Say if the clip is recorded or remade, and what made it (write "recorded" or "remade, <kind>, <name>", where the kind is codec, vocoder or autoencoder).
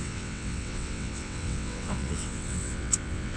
remade, vocoder, WaveNeXt